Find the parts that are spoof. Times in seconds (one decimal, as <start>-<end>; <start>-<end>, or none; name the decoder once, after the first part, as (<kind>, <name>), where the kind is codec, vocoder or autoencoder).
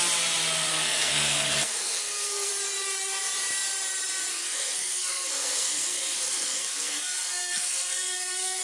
0.7-2.5 (codec, SNAC); 4.3-8.6